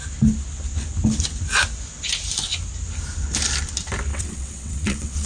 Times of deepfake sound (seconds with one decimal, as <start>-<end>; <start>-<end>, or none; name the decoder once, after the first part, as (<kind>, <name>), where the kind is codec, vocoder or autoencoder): 4.1-5.3 (vocoder, WaveNeXt)